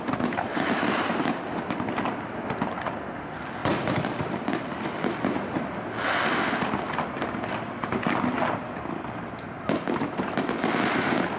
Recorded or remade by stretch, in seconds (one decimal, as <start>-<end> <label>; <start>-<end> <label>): 0.0-0.5 recorded; 0.5-1.4 remade; 1.4-3.6 recorded; 3.6-4.3 remade; 4.3-11.4 recorded